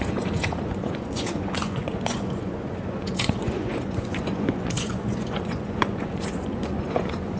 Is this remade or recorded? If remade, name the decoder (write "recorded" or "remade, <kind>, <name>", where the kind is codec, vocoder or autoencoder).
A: remade, vocoder, Vocos